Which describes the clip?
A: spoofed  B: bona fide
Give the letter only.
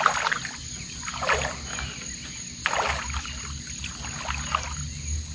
B